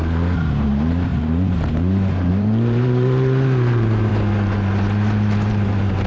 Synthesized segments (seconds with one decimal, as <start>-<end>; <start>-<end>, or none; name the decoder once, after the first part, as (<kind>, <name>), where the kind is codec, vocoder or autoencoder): 0.0-4.1 (vocoder, BigVGAN v2); 5.5-6.1